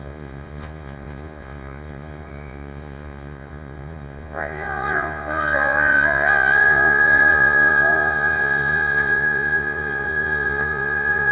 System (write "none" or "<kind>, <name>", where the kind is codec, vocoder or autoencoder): vocoder, Vocos